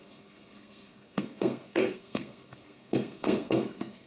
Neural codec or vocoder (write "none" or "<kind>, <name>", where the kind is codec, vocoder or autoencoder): codec, SNAC